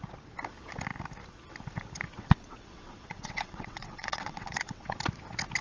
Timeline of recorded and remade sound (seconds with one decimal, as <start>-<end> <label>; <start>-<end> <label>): 0.0-2.1 recorded; 2.1-5.0 remade; 5.0-5.6 recorded